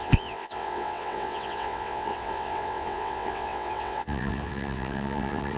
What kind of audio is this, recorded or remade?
remade